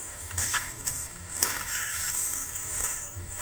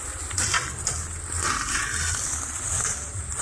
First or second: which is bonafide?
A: second